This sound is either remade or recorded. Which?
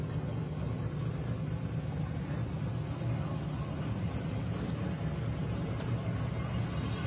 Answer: recorded